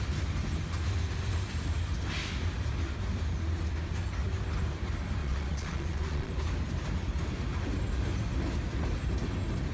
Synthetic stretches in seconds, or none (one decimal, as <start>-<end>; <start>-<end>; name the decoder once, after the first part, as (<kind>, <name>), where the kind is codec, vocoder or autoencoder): 5.2-6.3 (vocoder, Vocos)